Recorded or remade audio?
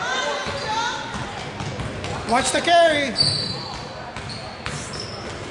recorded